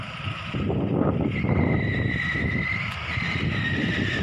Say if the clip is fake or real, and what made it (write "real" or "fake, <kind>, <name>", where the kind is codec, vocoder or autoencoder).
real